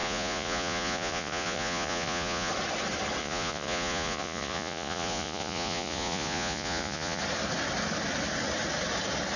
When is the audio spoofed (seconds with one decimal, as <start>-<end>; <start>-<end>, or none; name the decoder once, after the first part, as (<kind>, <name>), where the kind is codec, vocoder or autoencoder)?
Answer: 0.0-2.5 (vocoder, Vocos); 3.2-7.2